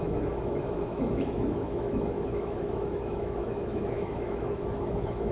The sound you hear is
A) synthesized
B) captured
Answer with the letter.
A